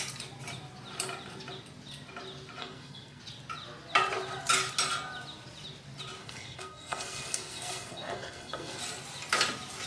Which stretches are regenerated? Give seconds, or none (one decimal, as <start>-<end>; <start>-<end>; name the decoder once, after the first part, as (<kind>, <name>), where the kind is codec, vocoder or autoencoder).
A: 2.6-3.2 (codec, SNAC); 6.2-8.8